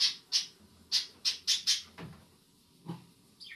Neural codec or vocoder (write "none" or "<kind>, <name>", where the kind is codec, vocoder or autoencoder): none